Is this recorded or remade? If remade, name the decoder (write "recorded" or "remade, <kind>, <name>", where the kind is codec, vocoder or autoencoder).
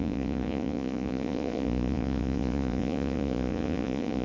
remade, vocoder, Vocos